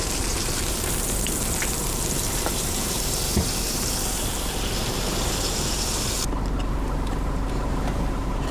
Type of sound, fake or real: fake